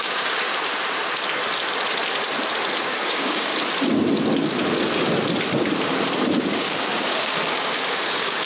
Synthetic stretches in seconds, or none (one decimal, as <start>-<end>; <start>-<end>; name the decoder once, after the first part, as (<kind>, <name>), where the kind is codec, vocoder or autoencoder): 0.0-0.5 (codec, DAC); 2.8-3.5; 6.4-8.5